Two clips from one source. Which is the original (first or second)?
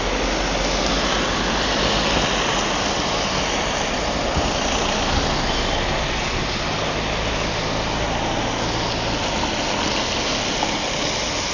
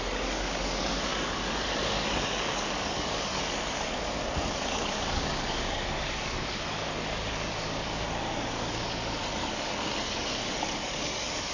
first